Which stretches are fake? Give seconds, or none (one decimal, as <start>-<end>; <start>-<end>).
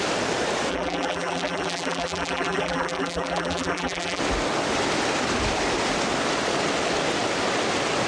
0.7-4.2